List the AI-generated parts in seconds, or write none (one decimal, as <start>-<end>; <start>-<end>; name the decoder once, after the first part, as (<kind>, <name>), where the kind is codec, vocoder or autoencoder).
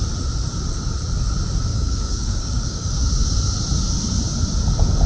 1.7-2.9 (codec, DAC)